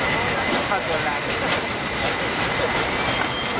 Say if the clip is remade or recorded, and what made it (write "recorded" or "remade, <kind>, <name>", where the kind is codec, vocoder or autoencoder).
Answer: recorded